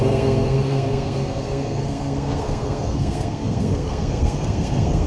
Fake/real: fake